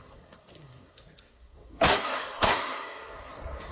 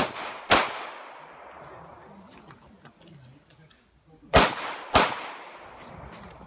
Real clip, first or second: second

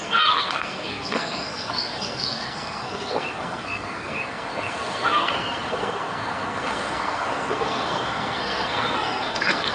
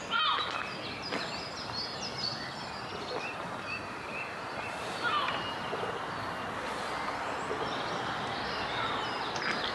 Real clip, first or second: second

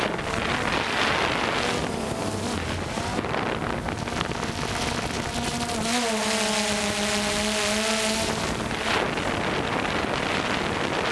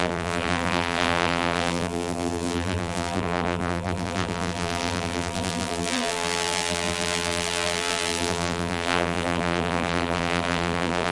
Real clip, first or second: first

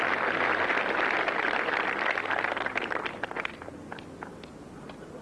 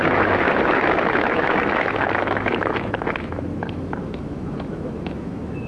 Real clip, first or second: first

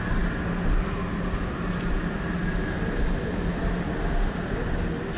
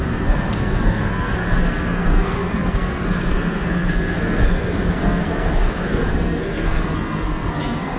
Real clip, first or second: first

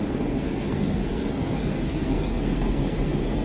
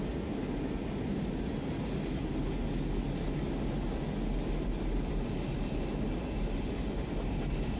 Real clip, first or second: second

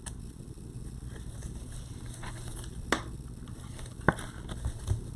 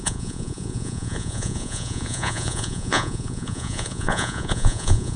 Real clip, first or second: first